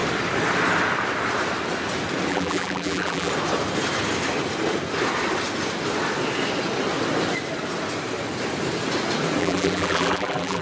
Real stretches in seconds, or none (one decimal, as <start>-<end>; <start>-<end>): 0.0-2.3; 3.3-9.4